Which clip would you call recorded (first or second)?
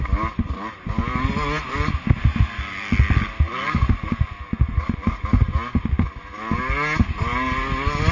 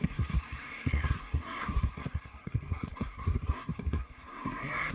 first